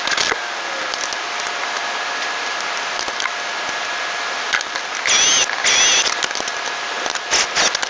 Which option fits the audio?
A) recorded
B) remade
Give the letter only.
A